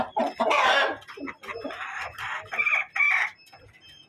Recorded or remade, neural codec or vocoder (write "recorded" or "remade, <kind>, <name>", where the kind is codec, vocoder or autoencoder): recorded